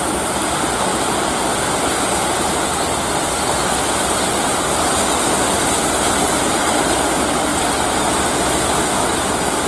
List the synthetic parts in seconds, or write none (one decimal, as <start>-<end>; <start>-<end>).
0.0-0.9; 3.7-7.5; 8.1-9.7